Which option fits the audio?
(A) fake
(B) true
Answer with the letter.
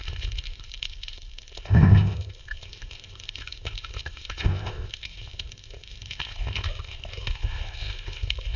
A